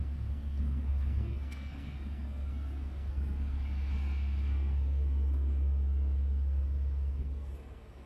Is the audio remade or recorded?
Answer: remade